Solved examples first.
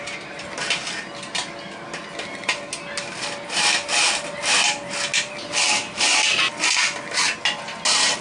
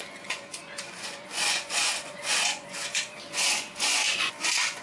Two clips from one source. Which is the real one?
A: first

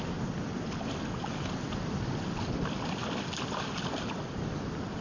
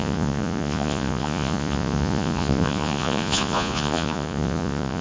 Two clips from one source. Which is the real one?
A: first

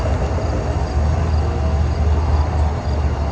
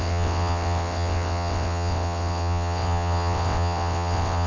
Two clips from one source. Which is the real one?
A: first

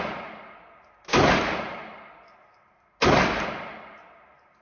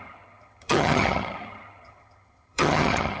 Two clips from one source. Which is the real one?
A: first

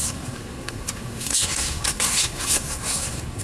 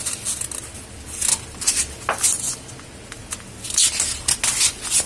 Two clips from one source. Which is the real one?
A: second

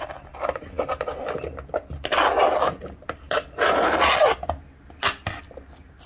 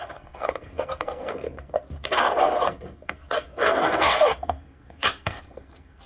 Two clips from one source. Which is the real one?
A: first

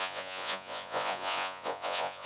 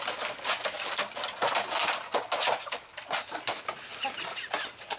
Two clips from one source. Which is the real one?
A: second